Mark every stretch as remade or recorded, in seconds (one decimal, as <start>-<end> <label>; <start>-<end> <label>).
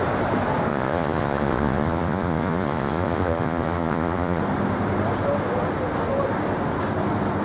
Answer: 0.0-0.7 recorded; 0.7-4.4 remade; 4.4-7.4 recorded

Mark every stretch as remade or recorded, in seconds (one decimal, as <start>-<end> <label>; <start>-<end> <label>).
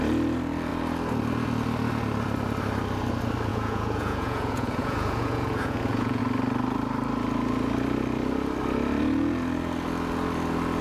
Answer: 0.0-3.5 recorded; 3.5-6.2 remade; 6.2-10.8 recorded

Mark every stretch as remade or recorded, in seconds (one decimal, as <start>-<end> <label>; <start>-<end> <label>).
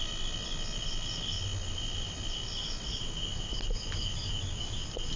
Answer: 0.0-5.2 recorded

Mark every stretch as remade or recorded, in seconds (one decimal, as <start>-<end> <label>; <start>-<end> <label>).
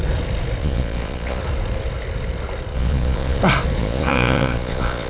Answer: 0.0-0.6 recorded; 0.6-1.4 remade; 1.4-2.7 recorded; 2.7-3.4 remade; 3.4-3.8 recorded; 3.8-5.1 remade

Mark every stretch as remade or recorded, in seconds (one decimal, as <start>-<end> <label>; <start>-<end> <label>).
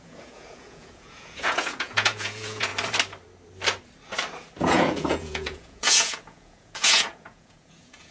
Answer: 0.0-2.7 remade; 2.7-4.6 recorded; 4.6-8.1 remade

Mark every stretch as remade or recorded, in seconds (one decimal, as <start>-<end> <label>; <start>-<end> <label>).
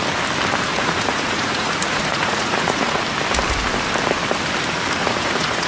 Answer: 0.0-0.7 recorded; 0.7-3.0 remade; 3.0-5.0 recorded; 5.0-5.7 remade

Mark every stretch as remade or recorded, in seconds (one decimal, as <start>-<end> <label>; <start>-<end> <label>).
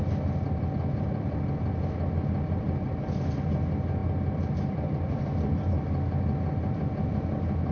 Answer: 0.0-7.7 recorded